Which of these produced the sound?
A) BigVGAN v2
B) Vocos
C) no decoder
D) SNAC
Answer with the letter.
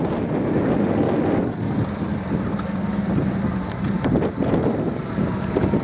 C